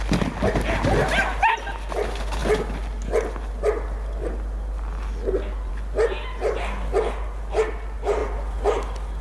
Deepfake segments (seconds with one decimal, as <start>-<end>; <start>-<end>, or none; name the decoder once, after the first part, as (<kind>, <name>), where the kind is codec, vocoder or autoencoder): none